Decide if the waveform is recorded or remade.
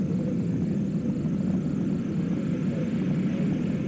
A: recorded